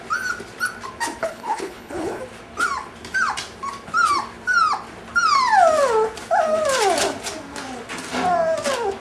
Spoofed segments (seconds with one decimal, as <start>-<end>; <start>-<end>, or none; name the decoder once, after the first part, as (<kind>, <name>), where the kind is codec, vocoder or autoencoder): 1.2-2.2 (codec, HILCodec)